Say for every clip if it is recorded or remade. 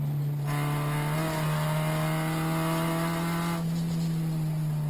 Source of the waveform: recorded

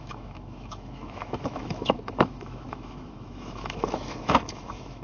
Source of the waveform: remade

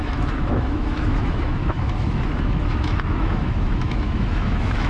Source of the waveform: remade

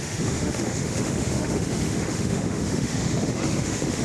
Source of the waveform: remade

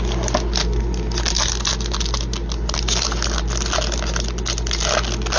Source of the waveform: recorded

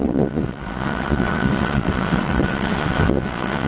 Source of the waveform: remade